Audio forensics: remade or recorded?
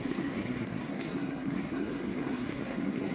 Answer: remade